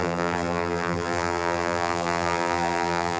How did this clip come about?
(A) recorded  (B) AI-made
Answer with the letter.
B